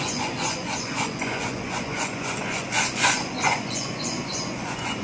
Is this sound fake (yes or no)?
yes